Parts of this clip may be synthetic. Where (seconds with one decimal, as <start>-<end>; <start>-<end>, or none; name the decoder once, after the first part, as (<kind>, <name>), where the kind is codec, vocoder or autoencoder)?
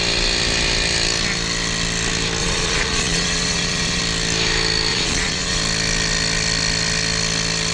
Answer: 2.4-4.0 (vocoder, Vocos); 4.9-5.6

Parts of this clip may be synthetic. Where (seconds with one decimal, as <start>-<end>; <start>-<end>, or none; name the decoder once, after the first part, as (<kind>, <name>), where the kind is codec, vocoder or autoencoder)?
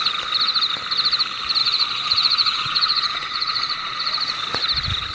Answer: 1.6-4.4 (vocoder, Vocos)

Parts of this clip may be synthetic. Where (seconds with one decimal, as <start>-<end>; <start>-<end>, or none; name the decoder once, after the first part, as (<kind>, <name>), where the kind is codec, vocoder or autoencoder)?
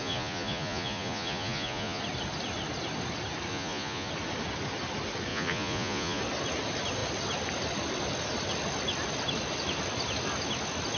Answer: 0.0-2.0 (vocoder, Vocos); 3.5-4.1; 5.3-6.2